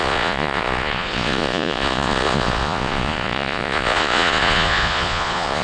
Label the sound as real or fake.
fake